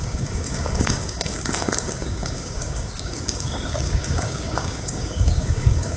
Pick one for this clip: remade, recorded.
remade